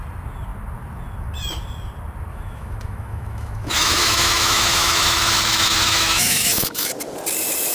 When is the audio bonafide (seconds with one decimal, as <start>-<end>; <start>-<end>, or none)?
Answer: 0.0-2.3; 6.9-7.7